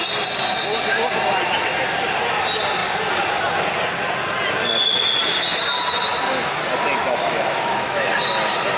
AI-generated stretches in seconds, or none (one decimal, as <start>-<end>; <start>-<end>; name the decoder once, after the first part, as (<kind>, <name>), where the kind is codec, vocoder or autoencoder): 6.1-6.6 (autoencoder, DAC-VAE); 7.0-8.1